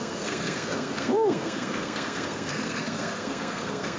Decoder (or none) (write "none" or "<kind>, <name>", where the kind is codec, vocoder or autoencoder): codec, SNAC